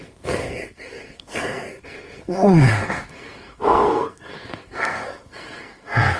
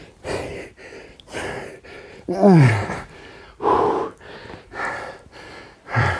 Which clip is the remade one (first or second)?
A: first